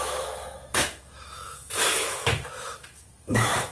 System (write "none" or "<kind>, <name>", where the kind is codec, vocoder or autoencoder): autoencoder, DAC-VAE